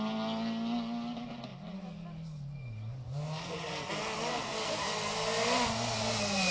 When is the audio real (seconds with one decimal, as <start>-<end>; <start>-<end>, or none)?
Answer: 0.0-4.3; 4.9-6.5